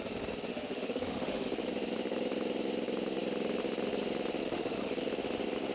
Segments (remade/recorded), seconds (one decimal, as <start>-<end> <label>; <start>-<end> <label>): 0.0-0.5 recorded; 0.5-1.7 remade; 1.7-4.4 recorded; 4.4-5.1 remade; 5.1-5.7 recorded